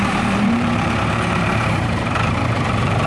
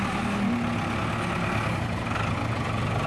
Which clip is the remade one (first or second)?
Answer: first